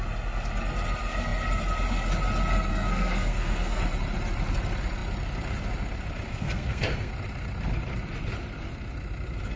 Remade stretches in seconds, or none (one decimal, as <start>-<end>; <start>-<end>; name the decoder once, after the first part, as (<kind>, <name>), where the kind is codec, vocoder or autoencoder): 2.7-3.8 (codec, SNAC); 6.3-7.1